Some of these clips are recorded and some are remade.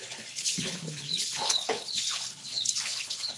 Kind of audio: remade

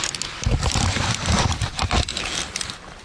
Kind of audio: recorded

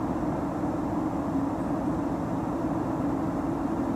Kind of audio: recorded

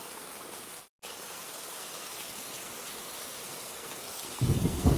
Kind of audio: remade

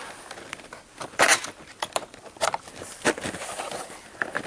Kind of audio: remade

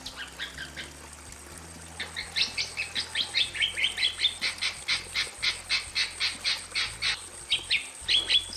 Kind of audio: recorded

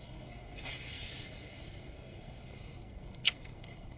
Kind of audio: remade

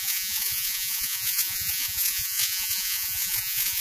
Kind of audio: remade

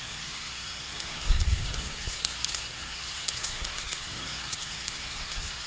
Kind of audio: remade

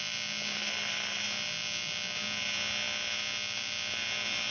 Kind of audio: recorded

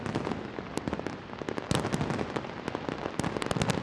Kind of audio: recorded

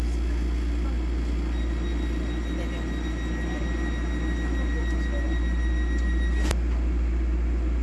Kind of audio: recorded